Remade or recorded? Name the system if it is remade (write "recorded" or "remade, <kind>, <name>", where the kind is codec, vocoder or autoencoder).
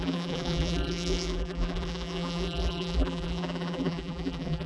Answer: remade, vocoder, BigVGAN v2